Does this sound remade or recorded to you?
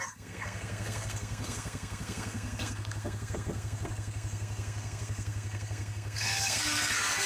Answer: remade